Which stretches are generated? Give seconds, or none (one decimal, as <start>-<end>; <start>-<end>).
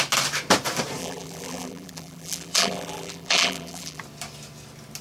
1.0-4.0